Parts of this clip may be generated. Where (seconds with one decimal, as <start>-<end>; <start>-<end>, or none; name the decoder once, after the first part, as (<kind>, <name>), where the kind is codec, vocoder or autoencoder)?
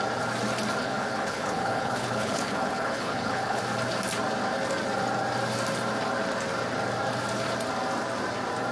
0.8-3.6 (codec, HILCodec)